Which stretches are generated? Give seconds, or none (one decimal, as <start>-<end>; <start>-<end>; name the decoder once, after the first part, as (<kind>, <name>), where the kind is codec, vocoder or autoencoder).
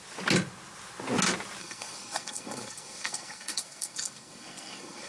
1.6-5.1 (codec, SNAC)